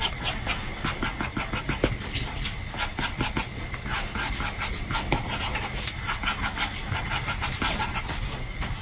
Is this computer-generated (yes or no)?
no